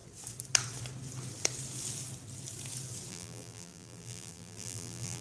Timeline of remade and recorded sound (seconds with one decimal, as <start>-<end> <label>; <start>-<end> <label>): 0.0-3.1 recorded; 3.1-5.2 remade